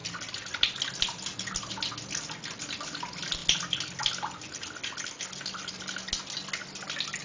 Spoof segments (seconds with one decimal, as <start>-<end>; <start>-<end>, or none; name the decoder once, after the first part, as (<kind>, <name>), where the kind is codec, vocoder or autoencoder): none